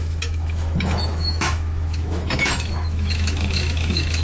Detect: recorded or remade remade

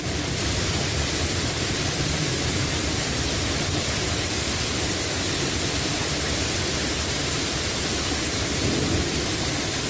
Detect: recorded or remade remade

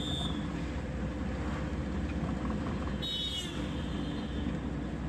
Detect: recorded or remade recorded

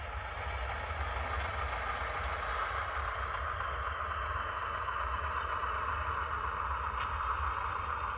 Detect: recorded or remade recorded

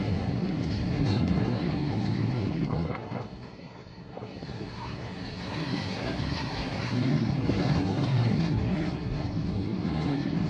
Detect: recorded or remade remade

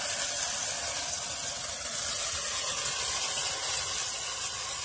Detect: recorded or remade recorded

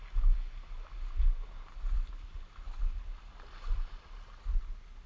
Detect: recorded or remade recorded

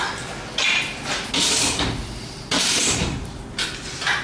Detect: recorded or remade recorded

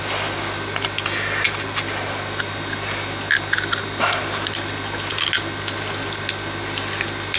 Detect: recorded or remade recorded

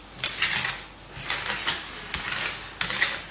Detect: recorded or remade recorded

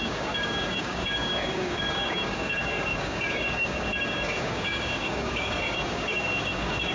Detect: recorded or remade remade